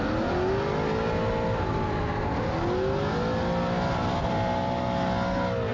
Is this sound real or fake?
real